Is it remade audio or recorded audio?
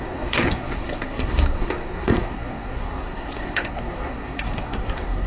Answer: remade